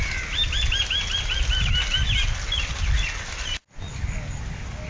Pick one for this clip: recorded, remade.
recorded